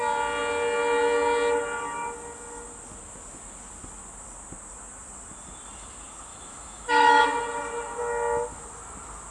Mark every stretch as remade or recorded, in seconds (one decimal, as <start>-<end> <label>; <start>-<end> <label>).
0.0-6.3 recorded; 6.3-7.2 remade; 7.2-9.3 recorded